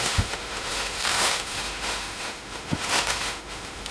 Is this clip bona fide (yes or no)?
no